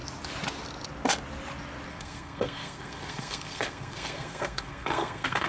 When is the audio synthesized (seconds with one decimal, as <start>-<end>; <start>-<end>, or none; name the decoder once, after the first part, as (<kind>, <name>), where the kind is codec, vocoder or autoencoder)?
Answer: 1.9-5.5 (codec, SNAC)